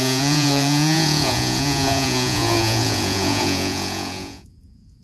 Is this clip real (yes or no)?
no